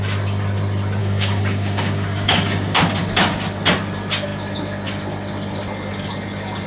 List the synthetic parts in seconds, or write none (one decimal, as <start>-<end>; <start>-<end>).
1.0-2.8